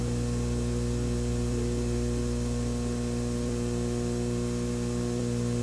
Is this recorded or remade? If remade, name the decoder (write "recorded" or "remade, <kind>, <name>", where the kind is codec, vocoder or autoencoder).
recorded